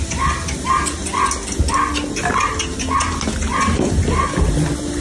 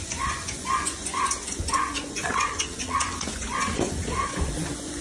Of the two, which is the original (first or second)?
first